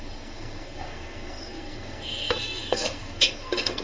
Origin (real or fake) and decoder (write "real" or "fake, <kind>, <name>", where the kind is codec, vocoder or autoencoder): fake, codec, SNAC